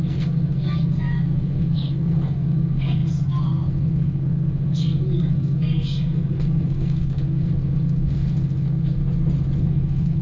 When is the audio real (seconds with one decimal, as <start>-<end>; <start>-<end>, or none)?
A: 9.0-9.6